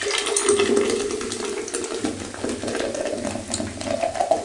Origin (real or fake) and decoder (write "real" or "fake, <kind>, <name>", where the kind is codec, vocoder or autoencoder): real